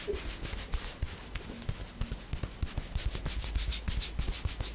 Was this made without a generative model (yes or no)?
yes